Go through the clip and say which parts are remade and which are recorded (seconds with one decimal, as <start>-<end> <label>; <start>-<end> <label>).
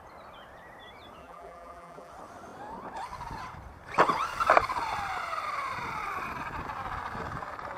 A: 0.0-1.2 recorded; 1.2-2.1 remade; 2.1-7.8 recorded